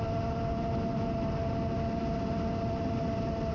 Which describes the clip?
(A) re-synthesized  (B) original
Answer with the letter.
B